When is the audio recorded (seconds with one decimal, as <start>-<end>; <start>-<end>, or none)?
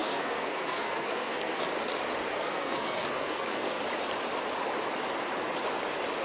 1.6-2.3; 3.8-6.2